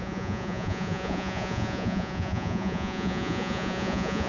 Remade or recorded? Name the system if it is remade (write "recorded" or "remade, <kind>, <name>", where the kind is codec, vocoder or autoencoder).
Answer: remade, vocoder, Vocos